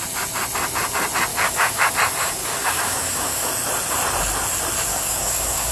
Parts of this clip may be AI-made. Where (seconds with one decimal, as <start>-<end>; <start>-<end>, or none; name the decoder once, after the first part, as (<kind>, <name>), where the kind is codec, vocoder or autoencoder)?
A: 1.3-1.9 (codec, DAC); 2.4-3.5; 4.9-5.7